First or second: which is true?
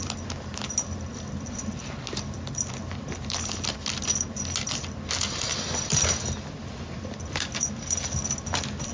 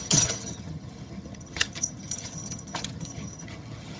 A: first